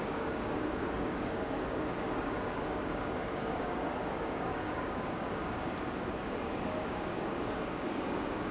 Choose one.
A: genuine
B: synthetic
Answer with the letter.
B